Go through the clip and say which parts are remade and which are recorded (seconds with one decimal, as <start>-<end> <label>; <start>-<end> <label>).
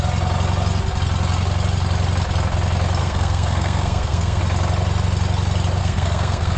0.0-3.0 recorded; 3.0-4.4 remade; 4.4-5.8 recorded; 5.8-6.6 remade